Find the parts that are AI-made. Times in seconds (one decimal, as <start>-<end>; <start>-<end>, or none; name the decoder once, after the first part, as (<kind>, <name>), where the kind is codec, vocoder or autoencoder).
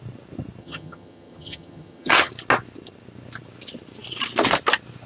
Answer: 0.6-2.3 (vocoder, HiFi-GAN)